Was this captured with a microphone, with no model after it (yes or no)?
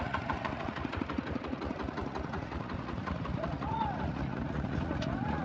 no